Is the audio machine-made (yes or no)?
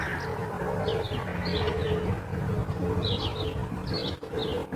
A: no